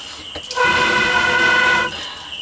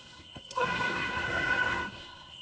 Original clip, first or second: first